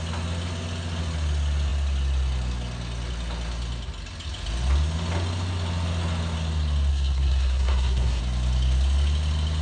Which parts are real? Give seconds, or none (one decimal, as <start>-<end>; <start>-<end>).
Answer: 0.0-6.9; 8.2-9.6